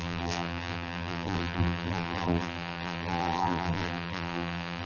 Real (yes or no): no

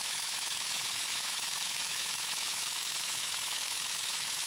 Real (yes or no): no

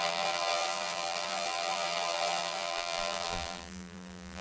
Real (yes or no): no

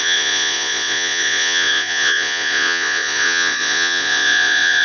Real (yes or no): no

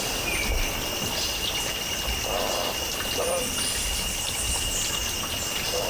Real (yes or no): yes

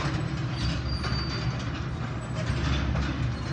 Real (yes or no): yes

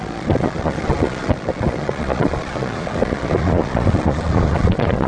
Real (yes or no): no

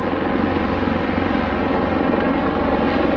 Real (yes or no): yes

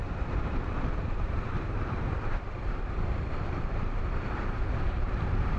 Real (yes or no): no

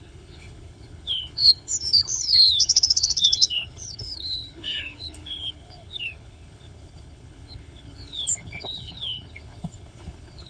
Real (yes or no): no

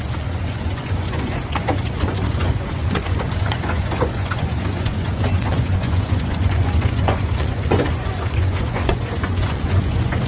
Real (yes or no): no